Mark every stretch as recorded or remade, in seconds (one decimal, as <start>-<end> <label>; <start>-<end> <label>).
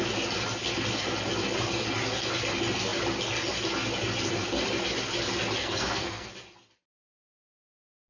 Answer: 0.0-5.6 recorded; 5.6-6.3 remade; 6.3-8.1 recorded